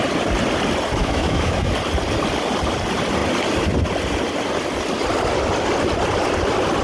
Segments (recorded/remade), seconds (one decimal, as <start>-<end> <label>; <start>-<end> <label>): 0.0-1.0 recorded; 1.0-1.7 remade; 1.7-6.8 recorded